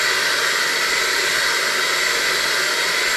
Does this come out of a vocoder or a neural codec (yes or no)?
no